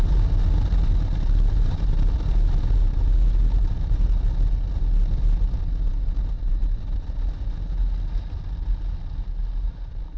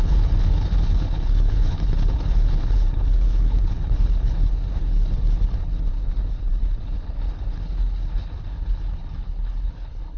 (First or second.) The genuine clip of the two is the first